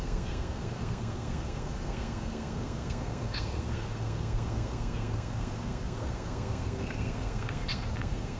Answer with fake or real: fake